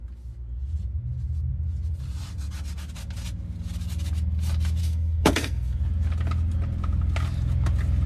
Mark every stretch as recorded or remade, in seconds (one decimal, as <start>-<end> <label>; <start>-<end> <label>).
0.0-4.8 recorded; 4.8-5.8 remade; 5.8-8.1 recorded